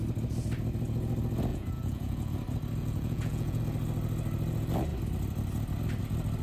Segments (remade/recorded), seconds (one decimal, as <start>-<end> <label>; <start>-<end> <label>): 0.0-1.5 recorded; 1.5-2.3 remade; 2.3-2.8 recorded; 2.8-3.6 remade; 3.6-6.4 recorded